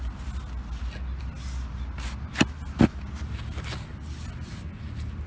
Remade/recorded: recorded